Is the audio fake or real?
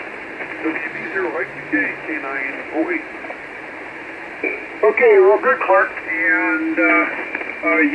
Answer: real